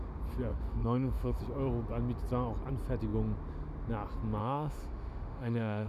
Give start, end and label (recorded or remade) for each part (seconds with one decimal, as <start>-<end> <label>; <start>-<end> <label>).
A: 0.0-0.5 recorded; 0.5-1.4 remade; 1.4-4.4 recorded; 4.4-5.9 remade